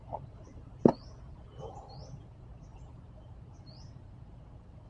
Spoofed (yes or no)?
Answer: no